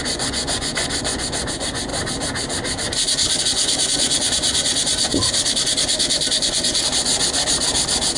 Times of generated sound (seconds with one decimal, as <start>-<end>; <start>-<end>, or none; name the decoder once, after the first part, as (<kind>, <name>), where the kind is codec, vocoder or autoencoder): 0.0-1.9 (vocoder, Vocos); 3.4-5.2; 6.3-7.1